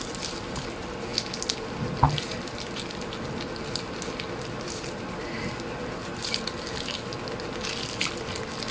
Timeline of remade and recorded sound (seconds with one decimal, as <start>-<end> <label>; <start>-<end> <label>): 0.0-8.7 recorded